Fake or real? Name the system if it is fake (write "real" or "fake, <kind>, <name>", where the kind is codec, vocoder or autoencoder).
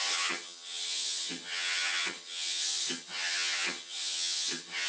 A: fake, vocoder, HiFi-GAN